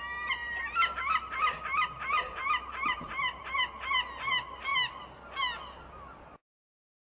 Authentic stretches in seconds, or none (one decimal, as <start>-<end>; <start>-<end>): 0.0-7.1